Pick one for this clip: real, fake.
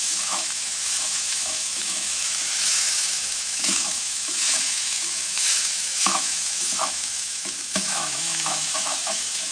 fake